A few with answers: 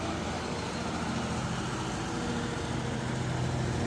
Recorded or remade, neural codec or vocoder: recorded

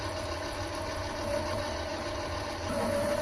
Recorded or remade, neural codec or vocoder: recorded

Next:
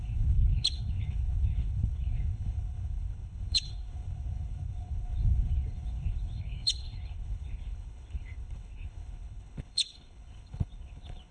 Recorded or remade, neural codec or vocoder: remade, codec, HILCodec